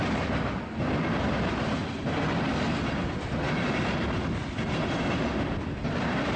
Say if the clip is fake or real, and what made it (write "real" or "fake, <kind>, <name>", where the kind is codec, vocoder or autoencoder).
fake, vocoder, BigVGAN v2